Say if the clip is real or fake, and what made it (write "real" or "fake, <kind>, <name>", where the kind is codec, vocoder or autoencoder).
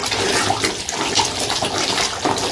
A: fake, vocoder, BigVGAN v2